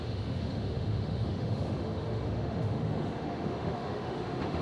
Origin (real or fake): fake